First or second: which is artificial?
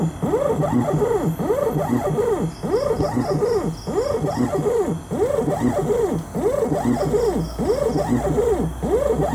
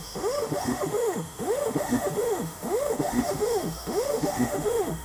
second